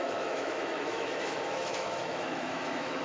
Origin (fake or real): fake